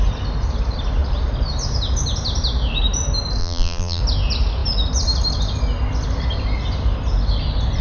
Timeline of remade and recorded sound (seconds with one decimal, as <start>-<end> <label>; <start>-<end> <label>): 0.0-3.4 recorded; 3.4-4.0 remade; 4.0-7.8 recorded

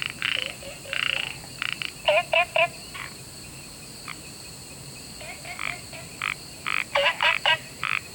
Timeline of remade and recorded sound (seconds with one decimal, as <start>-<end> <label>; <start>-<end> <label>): 0.0-7.0 recorded; 7.0-8.1 remade

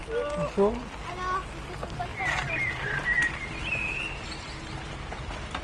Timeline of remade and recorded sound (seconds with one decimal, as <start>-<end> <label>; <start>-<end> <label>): 0.0-2.1 recorded; 2.1-5.6 remade